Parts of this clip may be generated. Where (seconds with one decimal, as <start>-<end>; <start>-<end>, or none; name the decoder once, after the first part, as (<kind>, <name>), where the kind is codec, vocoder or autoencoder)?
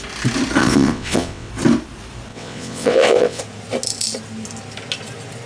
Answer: 0.6-1.5 (vocoder, WaveNeXt); 2.3-3.4